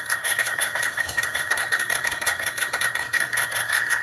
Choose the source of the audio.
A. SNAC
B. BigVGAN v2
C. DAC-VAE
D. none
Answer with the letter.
A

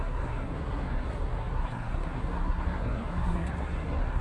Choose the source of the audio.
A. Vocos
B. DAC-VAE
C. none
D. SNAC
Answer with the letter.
D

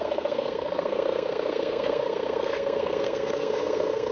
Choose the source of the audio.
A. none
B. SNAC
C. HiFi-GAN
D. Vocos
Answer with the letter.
B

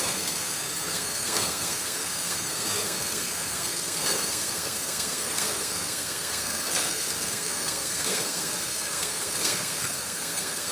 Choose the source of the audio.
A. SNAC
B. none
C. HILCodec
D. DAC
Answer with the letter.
A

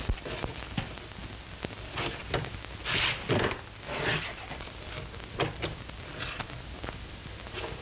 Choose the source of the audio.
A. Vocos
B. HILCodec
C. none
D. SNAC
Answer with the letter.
C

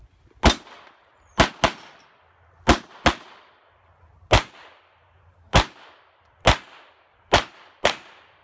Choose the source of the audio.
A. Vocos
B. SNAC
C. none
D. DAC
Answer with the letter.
C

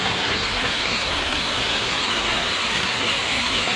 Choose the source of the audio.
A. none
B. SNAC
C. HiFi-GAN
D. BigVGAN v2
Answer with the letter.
B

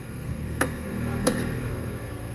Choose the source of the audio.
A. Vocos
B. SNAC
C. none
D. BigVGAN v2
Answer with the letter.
B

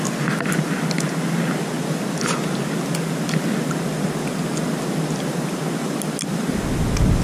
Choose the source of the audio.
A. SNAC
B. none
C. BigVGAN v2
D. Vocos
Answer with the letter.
B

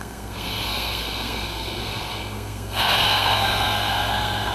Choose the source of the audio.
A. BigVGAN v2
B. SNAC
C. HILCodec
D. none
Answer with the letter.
B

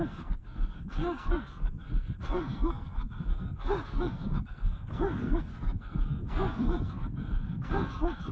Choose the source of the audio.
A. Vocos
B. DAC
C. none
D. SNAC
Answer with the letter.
D